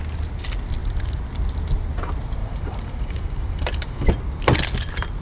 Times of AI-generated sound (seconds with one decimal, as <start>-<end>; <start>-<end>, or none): 2.4-4.1